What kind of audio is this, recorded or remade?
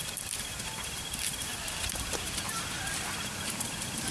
remade